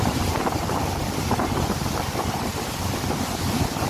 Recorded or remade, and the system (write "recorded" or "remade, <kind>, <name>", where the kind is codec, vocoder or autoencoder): remade, vocoder, BigVGAN v2